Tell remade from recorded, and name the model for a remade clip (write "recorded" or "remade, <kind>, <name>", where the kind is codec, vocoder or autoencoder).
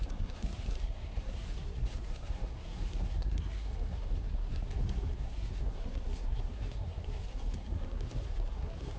remade, codec, SNAC